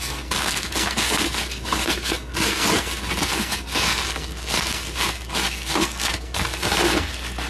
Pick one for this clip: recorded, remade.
remade